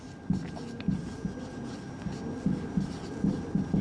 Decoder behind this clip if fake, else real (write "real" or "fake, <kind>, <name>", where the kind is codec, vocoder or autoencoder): real